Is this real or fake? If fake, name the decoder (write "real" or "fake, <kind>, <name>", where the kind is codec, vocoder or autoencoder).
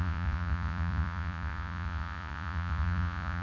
fake, vocoder, Vocos